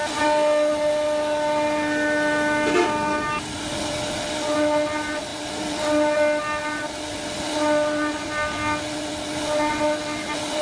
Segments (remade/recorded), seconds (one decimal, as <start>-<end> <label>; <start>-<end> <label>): 0.0-10.6 recorded